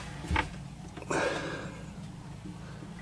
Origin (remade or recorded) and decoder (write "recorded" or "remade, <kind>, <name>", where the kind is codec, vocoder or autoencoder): recorded